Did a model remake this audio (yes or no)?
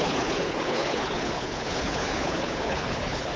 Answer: yes